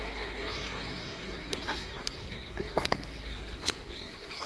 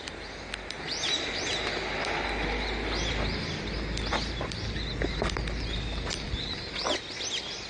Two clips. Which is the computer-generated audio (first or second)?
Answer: first